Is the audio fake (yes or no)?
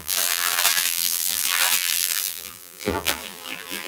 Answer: yes